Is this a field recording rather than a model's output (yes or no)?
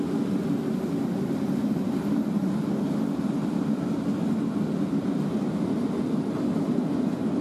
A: yes